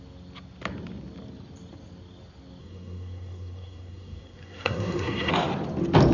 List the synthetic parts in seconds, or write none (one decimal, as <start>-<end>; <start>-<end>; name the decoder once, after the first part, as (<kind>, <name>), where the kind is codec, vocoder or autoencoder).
2.6-5.3 (codec, SNAC)